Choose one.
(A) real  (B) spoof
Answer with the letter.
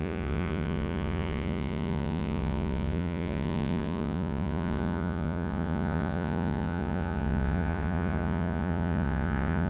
B